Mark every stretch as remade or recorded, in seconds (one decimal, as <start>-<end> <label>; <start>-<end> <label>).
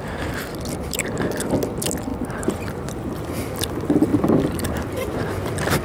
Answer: 0.0-2.1 recorded; 2.1-3.3 remade; 3.3-4.1 recorded; 4.1-4.7 remade; 4.7-5.8 recorded